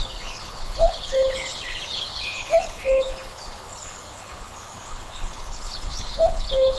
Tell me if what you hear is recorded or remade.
remade